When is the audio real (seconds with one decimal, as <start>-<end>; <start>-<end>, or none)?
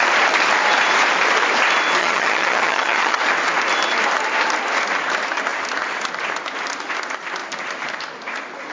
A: 0.0-2.0; 3.2-8.7